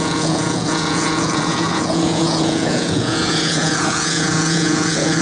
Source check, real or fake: fake